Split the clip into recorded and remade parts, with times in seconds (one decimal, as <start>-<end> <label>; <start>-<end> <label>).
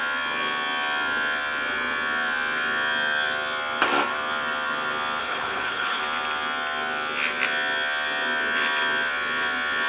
0.0-5.2 recorded; 5.2-6.0 remade; 6.0-9.9 recorded